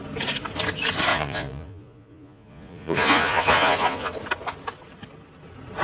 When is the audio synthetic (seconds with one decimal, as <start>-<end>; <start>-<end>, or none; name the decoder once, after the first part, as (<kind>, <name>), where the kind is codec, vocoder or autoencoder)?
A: 1.1-4.1 (vocoder, Vocos)